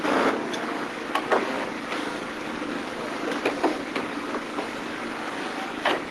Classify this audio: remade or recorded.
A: remade